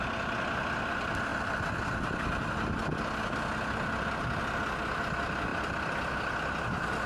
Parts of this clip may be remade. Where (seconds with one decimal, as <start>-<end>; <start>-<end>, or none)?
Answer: none